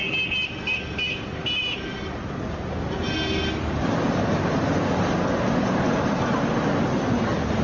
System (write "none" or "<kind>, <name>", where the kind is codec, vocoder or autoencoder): none